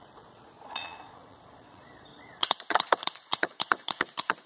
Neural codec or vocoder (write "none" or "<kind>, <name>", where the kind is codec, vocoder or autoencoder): vocoder, Vocos